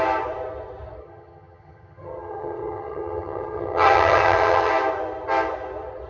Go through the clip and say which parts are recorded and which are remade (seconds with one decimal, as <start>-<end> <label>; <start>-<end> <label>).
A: 0.0-1.0 recorded; 1.0-4.7 remade; 4.7-6.1 recorded